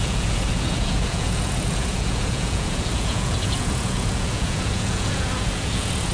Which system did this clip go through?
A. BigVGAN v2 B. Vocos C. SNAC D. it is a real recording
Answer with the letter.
B